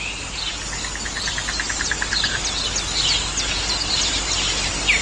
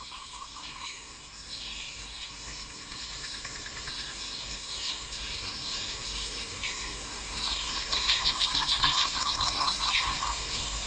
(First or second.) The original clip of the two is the first